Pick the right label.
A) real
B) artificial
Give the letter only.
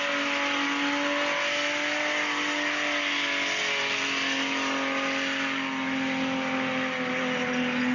A